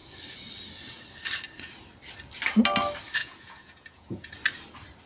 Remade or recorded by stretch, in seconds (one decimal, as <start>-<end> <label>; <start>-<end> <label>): 0.0-3.2 recorded; 3.2-4.3 remade; 4.3-5.1 recorded